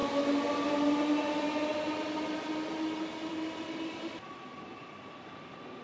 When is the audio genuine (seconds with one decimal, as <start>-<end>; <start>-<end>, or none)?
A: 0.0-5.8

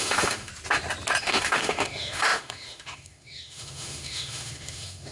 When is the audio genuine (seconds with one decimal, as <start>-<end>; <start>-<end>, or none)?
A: 0.5-1.2

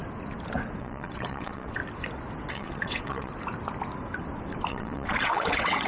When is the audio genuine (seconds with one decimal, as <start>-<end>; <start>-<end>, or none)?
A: 0.0-0.8; 1.8-2.5; 3.3-4.7

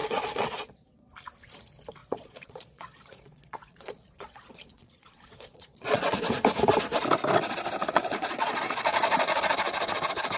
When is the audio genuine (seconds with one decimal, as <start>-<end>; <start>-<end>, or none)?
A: 1.1-2.0; 6.2-7.8; 9.4-10.4